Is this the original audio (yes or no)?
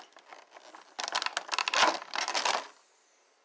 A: yes